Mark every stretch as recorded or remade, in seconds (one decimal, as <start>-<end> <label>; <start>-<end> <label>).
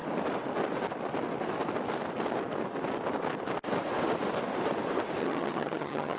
0.0-5.2 recorded; 5.2-6.2 remade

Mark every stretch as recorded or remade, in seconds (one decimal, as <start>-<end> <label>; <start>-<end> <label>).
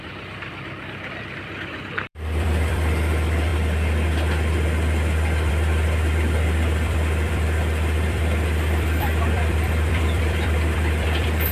0.0-3.5 remade; 3.5-5.5 recorded; 5.5-11.5 remade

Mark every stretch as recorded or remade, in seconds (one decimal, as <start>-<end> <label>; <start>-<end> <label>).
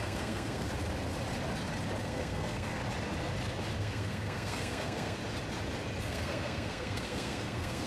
0.0-0.7 remade; 0.7-2.0 recorded; 2.0-2.8 remade; 2.8-3.8 recorded; 3.8-5.2 remade; 5.2-6.0 recorded; 6.0-7.9 remade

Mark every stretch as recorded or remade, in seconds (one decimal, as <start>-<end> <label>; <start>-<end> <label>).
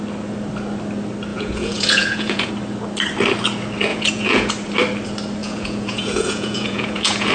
0.0-1.3 recorded; 1.3-2.5 remade; 2.5-3.9 recorded; 3.9-4.5 remade; 4.5-5.4 recorded; 5.4-7.3 remade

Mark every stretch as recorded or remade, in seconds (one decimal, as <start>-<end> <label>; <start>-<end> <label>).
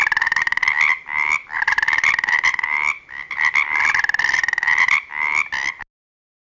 0.0-6.5 recorded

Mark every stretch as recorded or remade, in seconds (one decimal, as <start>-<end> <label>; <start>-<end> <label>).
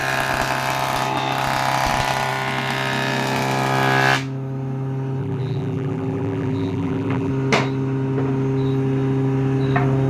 0.0-5.2 recorded; 5.2-7.3 remade; 7.3-10.1 recorded